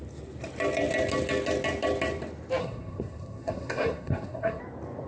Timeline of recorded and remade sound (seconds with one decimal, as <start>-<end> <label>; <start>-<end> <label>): 0.0-2.6 recorded; 2.6-4.6 remade; 4.6-5.1 recorded